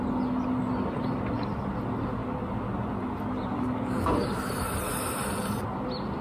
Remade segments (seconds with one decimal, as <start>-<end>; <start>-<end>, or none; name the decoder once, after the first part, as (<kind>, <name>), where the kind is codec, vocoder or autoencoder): none